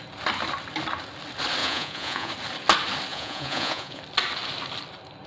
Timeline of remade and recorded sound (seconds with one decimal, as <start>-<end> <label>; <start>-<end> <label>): 0.0-1.6 recorded; 1.6-2.3 remade; 2.3-3.1 recorded; 3.1-4.0 remade; 4.0-5.3 recorded